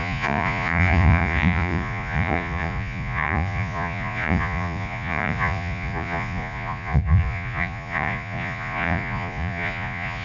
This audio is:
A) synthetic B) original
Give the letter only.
A